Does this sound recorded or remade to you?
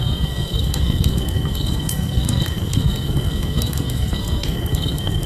remade